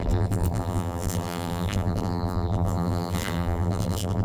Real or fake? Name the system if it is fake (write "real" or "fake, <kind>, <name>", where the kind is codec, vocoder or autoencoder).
fake, vocoder, BigVGAN v2